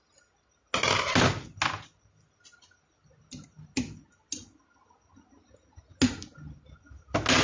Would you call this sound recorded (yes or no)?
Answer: yes